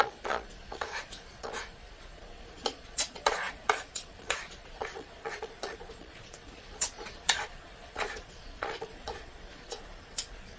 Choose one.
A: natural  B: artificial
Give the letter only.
B